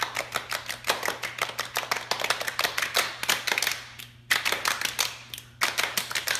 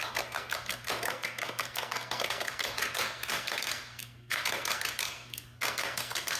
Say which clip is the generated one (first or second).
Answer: second